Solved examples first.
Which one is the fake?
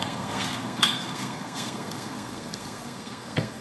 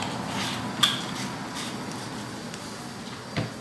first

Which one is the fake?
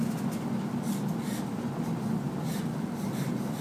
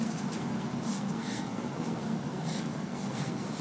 second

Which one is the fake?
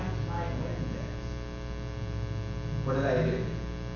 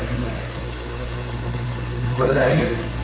second